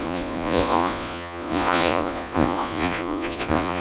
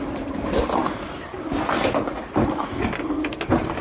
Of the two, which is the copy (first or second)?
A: first